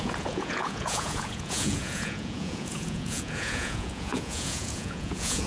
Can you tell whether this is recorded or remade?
remade